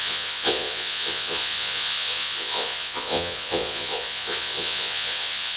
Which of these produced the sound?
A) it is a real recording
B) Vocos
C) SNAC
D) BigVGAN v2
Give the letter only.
B